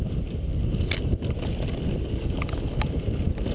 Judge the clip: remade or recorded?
recorded